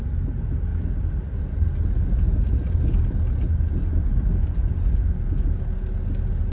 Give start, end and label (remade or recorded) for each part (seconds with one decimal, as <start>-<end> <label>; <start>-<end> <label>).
0.0-6.5 recorded